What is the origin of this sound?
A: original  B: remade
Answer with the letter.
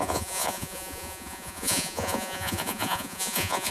B